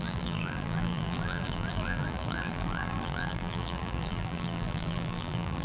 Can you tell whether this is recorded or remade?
remade